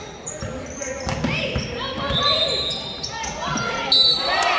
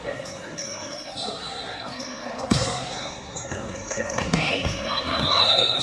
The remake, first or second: second